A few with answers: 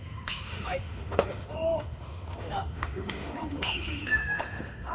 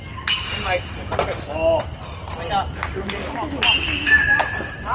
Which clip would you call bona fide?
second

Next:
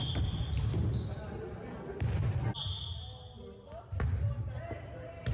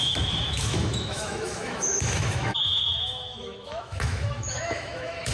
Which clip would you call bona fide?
first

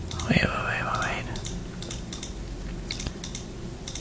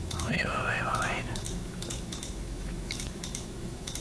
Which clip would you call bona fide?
first